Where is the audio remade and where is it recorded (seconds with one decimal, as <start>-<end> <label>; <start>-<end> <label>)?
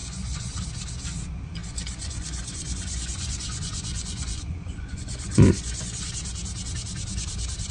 0.0-0.5 remade; 0.5-1.6 recorded; 1.6-6.0 remade; 6.0-7.7 recorded